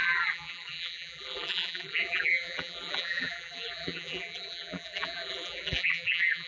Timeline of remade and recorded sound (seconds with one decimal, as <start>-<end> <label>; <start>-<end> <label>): 0.0-6.5 remade